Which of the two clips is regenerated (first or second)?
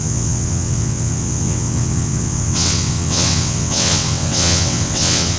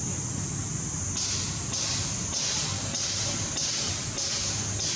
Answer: first